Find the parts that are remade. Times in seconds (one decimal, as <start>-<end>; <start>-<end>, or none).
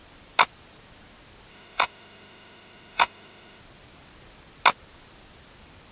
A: 1.5-3.6